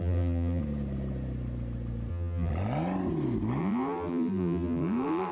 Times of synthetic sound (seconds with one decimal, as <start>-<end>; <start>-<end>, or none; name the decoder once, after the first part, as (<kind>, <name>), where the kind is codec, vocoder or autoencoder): 0.0-0.6 (vocoder, BigVGAN v2); 2.1-2.5; 3.6-5.3